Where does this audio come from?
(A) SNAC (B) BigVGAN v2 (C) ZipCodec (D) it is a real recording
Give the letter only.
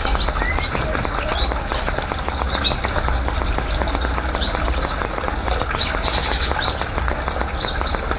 D